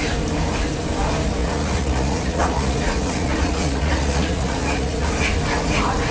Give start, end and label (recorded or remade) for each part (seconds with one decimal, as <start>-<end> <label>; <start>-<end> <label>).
0.0-1.4 recorded; 1.4-5.1 remade; 5.1-6.1 recorded

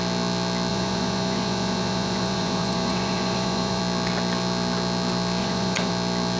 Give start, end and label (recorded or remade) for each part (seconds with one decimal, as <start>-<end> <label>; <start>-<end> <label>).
0.0-0.7 recorded; 0.7-3.8 remade; 3.8-5.4 recorded; 5.4-5.9 remade; 5.9-6.4 recorded

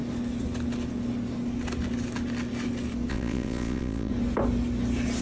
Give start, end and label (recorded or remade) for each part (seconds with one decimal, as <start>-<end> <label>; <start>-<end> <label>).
0.0-3.1 recorded; 3.1-4.1 remade; 4.1-5.2 recorded

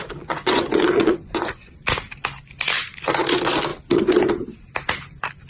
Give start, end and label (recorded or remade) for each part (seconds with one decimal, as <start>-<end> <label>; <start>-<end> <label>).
0.0-1.7 remade; 1.7-5.5 recorded

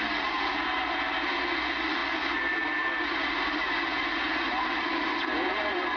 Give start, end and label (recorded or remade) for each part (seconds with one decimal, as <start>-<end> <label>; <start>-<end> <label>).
0.0-6.0 recorded

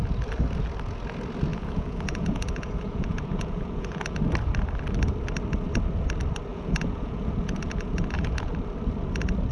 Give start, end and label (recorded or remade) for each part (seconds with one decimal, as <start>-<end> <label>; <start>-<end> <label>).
0.0-1.5 recorded; 1.5-4.2 remade; 4.2-6.5 recorded; 6.5-8.5 remade; 8.5-9.5 recorded

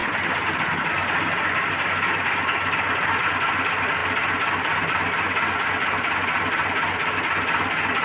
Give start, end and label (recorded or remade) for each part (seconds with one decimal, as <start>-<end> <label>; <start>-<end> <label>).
0.0-8.0 recorded